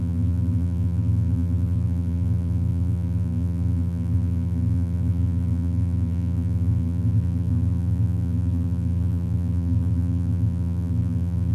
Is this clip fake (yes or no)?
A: yes